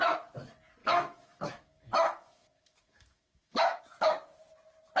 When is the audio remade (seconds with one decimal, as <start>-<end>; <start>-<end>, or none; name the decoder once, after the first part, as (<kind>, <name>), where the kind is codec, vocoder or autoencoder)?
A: 0.8-3.8 (autoencoder, DAC-VAE)